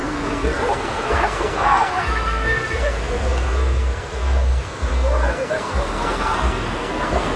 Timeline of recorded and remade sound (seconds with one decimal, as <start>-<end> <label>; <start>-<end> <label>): 0.0-7.4 remade

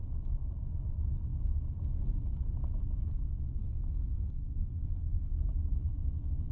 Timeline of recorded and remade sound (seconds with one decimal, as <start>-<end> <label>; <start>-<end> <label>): 0.0-3.6 recorded; 3.6-5.3 remade; 5.3-6.5 recorded

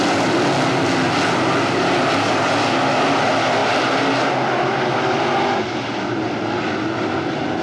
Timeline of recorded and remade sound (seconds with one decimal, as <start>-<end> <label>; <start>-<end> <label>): 0.0-7.6 recorded

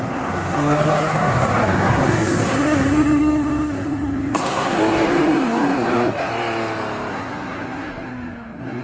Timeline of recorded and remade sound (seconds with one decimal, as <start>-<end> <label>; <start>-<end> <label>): 0.0-6.3 remade; 6.3-7.1 recorded; 7.1-8.8 remade

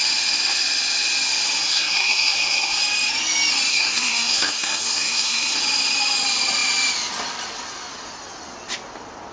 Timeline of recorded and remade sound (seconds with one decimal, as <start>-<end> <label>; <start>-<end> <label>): 0.0-1.6 recorded; 1.6-2.8 remade; 2.8-3.7 recorded; 3.7-5.6 remade; 5.6-9.3 recorded

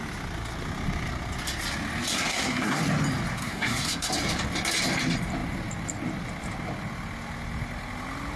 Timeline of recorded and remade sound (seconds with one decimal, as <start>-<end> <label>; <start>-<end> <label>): 0.0-2.1 recorded; 2.1-2.8 remade; 2.8-3.4 recorded; 3.4-4.1 remade; 4.1-8.4 recorded

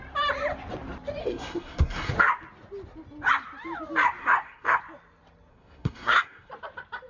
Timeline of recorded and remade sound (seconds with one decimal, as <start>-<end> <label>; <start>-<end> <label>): 0.0-1.2 recorded; 1.2-2.1 remade; 2.1-4.2 recorded; 4.2-4.8 remade; 4.8-5.5 recorded; 5.5-6.5 remade; 6.5-7.1 recorded